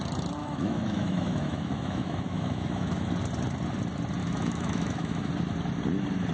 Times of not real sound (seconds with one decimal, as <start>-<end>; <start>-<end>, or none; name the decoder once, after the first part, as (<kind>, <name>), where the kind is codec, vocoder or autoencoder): 0.4-3.1 (autoencoder, DAC-VAE); 4.2-5.3